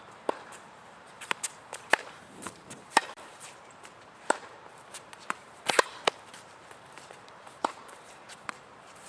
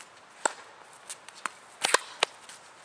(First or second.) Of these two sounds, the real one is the second